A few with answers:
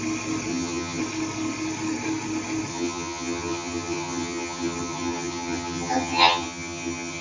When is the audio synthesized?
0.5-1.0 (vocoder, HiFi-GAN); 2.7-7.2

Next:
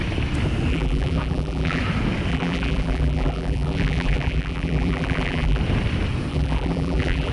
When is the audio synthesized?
0.7-1.8 (vocoder, BigVGAN v2); 2.3-5.6; 6.3-7.3

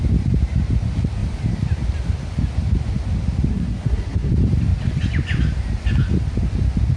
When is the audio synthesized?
3.5-4.3 (codec, SNAC)

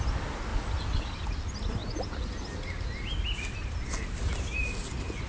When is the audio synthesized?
none

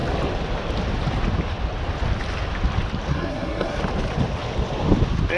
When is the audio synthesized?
3.1-3.8 (codec, SNAC)